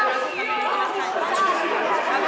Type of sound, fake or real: real